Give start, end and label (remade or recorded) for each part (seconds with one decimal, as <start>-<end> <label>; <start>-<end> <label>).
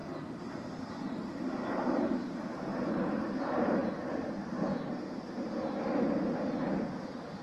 0.0-0.5 recorded; 0.5-3.8 remade; 3.8-7.4 recorded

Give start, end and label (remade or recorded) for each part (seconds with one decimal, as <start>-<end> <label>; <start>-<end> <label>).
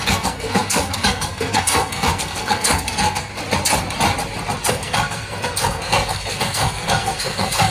0.0-3.3 remade; 3.3-4.7 recorded; 4.7-7.7 remade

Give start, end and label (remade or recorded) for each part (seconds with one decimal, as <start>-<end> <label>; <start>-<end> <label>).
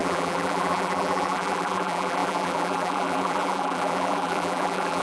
0.0-5.0 remade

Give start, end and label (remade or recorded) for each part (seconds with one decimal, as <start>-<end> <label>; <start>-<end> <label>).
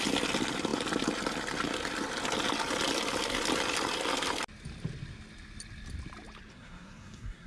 0.0-6.5 recorded; 6.5-7.5 remade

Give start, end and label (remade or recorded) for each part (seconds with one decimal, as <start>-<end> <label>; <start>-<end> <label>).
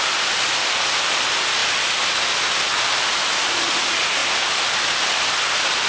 0.0-5.9 recorded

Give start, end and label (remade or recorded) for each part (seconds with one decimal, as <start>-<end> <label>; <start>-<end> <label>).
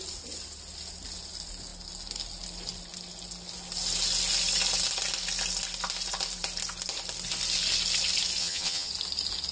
0.0-8.4 recorded; 8.4-8.9 remade; 8.9-9.5 recorded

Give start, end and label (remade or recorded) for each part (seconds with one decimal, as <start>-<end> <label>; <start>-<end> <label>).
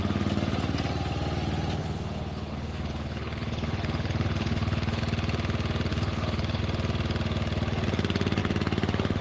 0.0-1.8 recorded; 1.8-5.0 remade; 5.0-5.9 recorded; 5.9-6.6 remade; 6.6-9.2 recorded